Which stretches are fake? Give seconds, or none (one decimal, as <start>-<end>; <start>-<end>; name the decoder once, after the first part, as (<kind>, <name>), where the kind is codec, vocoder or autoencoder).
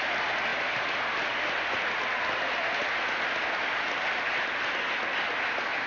none